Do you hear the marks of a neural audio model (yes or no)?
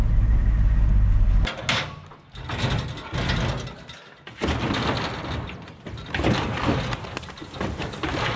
no